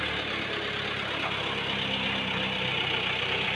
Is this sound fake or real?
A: real